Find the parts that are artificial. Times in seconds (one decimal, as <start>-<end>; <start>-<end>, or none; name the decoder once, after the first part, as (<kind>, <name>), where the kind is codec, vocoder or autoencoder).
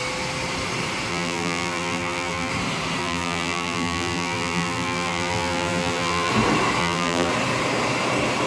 1.1-2.5 (vocoder, BigVGAN v2); 3.0-6.3; 6.8-7.3